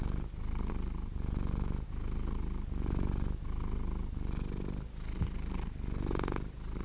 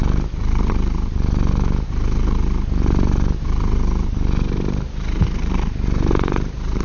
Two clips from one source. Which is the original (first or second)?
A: first